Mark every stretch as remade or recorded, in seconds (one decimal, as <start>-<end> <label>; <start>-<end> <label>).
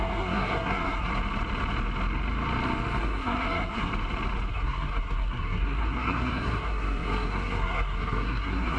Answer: 0.0-1.1 remade; 1.1-3.0 recorded; 3.0-3.9 remade; 3.9-4.5 recorded; 4.5-8.8 remade